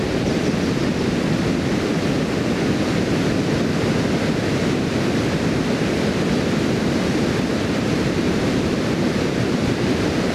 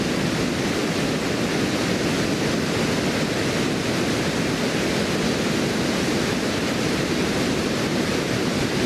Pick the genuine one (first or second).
second